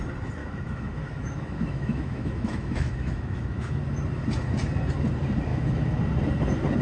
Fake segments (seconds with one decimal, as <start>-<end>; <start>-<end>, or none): 0.4-3.8; 5.5-6.0